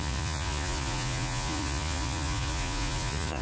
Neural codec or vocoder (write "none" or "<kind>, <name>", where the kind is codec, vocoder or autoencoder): vocoder, Vocos